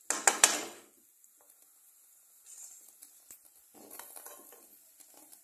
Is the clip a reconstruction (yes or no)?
no